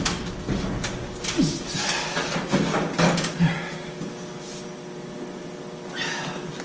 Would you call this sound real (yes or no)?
yes